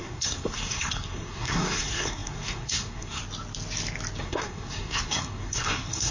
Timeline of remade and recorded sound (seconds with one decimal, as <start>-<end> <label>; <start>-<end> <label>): 0.0-3.2 remade; 3.2-4.2 recorded; 4.2-6.1 remade